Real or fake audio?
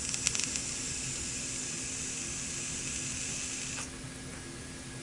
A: real